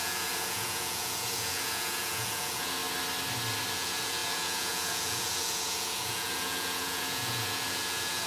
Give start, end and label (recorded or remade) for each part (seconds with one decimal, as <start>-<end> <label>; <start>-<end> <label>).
0.0-2.8 remade; 2.8-3.7 recorded; 3.7-8.3 remade